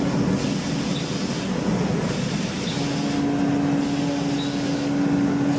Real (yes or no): yes